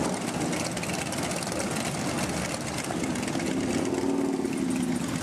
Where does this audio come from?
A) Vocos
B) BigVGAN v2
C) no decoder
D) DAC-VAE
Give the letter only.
C